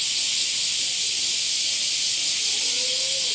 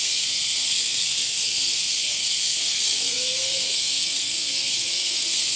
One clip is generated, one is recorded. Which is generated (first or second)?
second